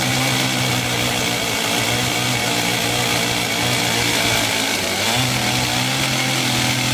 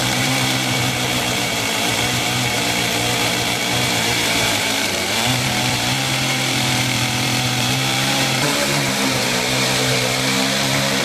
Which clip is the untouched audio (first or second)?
first